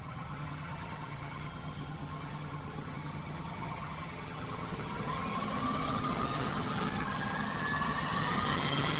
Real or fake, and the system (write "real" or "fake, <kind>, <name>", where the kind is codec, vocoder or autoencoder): fake, vocoder, HiFi-GAN